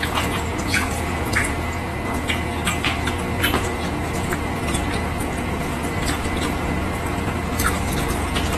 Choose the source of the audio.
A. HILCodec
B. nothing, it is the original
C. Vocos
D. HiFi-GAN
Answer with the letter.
C